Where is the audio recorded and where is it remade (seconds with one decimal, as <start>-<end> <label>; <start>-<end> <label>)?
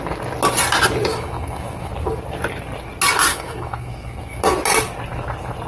0.0-1.1 recorded; 1.1-1.9 remade; 1.9-3.3 recorded; 3.3-4.4 remade; 4.4-5.7 recorded